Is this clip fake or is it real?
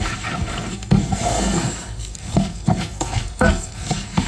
fake